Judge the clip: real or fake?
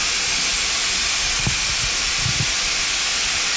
real